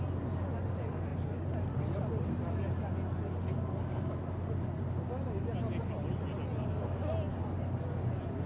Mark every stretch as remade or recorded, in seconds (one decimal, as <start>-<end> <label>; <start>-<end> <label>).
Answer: 0.0-8.5 recorded

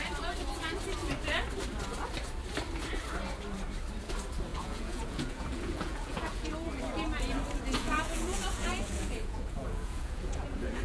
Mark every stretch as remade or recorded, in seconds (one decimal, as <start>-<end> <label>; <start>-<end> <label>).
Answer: 0.0-4.5 recorded; 4.5-6.5 remade; 6.5-7.7 recorded; 7.7-10.8 remade

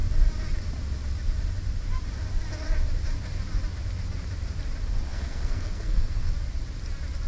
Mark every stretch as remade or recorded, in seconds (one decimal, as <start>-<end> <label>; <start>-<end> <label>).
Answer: 0.0-5.1 recorded; 5.1-6.3 remade; 6.3-7.3 recorded

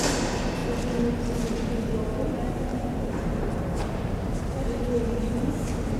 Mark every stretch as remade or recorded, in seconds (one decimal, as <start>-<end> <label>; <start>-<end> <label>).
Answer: 0.0-2.7 recorded; 2.7-5.5 remade; 5.5-6.0 recorded

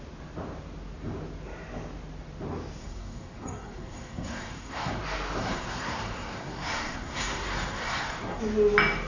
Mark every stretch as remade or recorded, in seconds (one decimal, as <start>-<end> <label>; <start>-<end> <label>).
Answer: 0.0-2.8 recorded; 2.8-5.0 remade; 5.0-5.4 recorded; 5.4-8.4 remade; 8.4-9.1 recorded